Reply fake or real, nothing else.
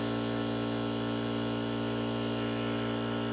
real